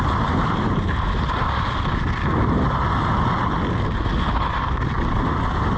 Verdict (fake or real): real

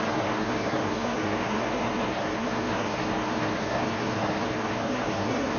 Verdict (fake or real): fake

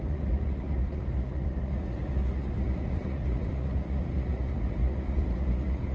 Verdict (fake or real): fake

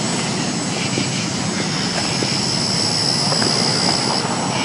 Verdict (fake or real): real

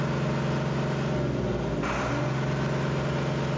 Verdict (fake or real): real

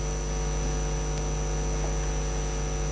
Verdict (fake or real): real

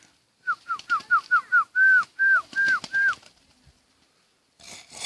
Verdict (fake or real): real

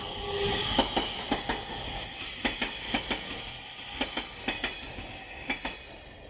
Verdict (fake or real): real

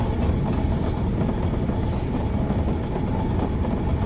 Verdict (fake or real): real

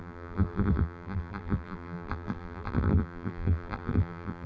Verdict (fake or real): fake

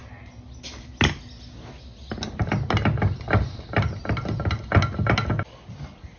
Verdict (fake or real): real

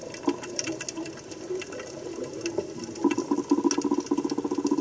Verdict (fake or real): real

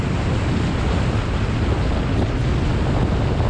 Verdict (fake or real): real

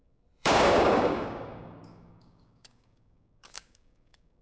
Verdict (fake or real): fake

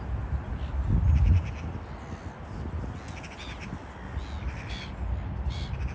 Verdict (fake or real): real